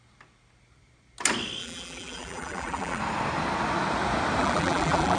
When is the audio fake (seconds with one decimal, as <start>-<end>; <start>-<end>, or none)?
1.6-3.0; 4.4-5.2